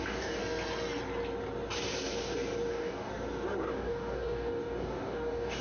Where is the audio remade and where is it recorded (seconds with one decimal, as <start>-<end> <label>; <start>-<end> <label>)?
0.0-0.4 remade; 0.4-2.7 recorded; 2.7-3.1 remade; 3.1-3.7 recorded; 3.7-5.6 remade